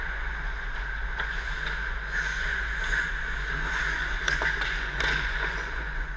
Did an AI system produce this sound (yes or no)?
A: yes